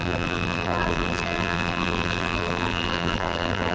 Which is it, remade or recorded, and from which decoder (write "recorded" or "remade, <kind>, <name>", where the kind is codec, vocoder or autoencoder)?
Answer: remade, vocoder, BigVGAN v2